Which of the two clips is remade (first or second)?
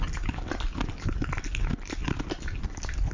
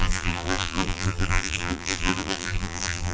second